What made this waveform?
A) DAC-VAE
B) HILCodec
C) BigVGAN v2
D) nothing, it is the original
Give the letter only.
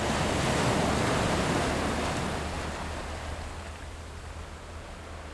D